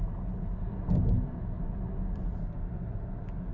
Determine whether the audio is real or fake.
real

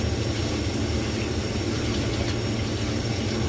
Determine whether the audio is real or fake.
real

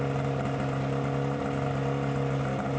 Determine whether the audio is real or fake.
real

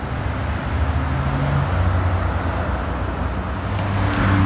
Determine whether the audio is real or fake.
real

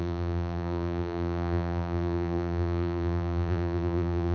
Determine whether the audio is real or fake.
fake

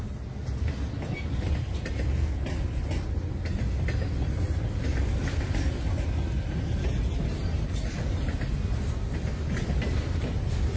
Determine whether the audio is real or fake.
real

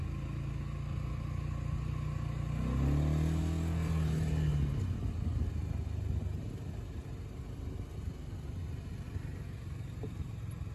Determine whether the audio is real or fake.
real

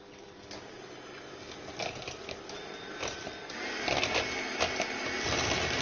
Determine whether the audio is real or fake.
real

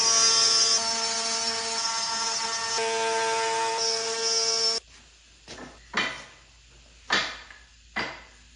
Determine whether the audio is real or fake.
real